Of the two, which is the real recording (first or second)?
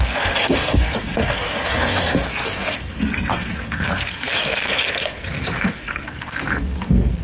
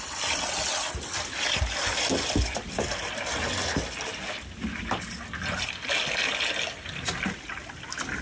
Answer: second